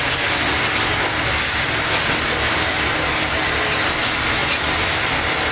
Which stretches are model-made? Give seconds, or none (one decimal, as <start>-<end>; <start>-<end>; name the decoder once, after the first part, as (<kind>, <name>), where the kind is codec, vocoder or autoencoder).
none